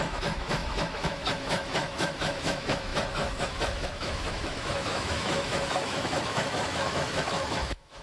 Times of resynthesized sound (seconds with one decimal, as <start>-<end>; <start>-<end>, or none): 0.0-8.0